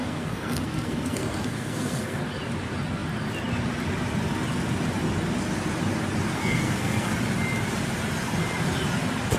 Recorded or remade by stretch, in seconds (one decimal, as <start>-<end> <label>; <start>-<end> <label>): 0.0-2.2 remade; 2.2-6.3 recorded; 6.3-7.1 remade; 7.1-9.4 recorded